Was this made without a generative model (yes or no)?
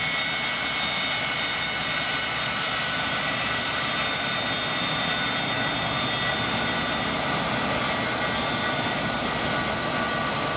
yes